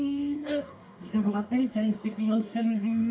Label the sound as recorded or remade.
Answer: remade